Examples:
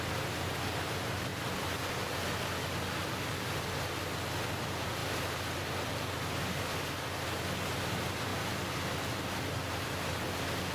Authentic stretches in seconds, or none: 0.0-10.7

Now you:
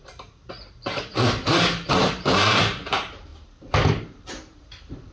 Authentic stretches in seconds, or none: 1.1-1.9; 3.3-4.1

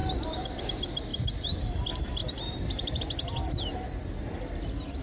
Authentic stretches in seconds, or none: 0.6-1.1; 3.0-5.0